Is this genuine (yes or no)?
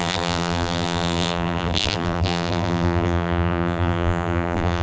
no